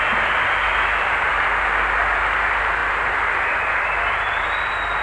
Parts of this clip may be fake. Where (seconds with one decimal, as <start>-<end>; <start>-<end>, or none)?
none

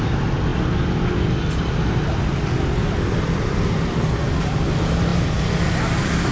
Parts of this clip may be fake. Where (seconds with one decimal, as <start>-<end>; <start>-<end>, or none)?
none

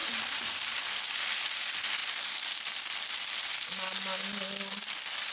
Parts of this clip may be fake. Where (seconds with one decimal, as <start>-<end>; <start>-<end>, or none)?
0.0-0.8

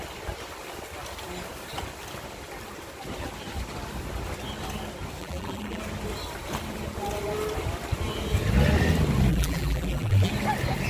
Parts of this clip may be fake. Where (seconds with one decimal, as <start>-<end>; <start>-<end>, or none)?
5.2-5.8; 9.3-10.3

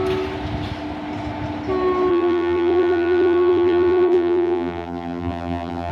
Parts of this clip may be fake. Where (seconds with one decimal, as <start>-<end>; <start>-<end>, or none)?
2.1-5.9

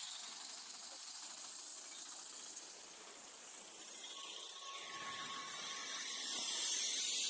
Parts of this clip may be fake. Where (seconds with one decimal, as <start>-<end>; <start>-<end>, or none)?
5.8-7.3

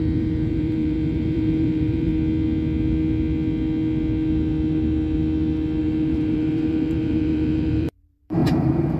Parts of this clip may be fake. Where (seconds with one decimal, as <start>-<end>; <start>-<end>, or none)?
0.0-2.1; 5.8-9.0

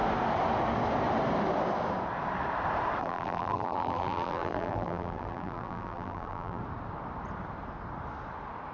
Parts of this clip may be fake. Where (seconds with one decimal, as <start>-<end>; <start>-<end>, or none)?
3.0-6.6